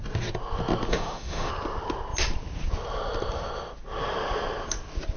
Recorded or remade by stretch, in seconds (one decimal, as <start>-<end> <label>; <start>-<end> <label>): 0.0-0.9 recorded; 0.9-1.5 remade; 1.5-5.2 recorded